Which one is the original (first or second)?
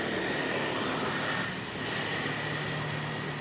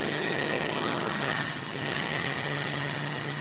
first